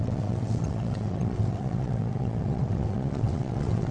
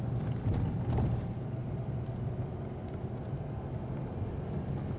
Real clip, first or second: second